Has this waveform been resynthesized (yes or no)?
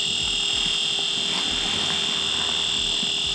no